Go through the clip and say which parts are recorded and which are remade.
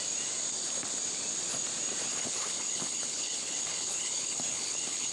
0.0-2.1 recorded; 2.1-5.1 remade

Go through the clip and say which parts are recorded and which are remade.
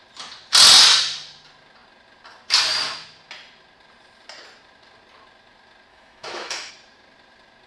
0.0-5.9 recorded; 5.9-6.7 remade; 6.7-7.7 recorded